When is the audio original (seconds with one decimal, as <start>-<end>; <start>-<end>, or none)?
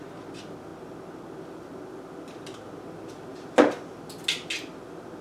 0.0-5.2